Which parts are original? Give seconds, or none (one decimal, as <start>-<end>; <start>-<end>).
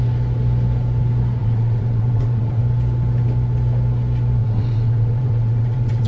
0.0-1.4; 2.6-4.4